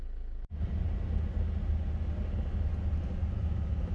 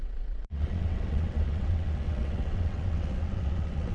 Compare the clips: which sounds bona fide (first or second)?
first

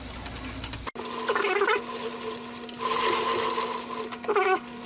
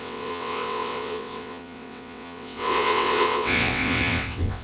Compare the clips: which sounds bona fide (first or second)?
first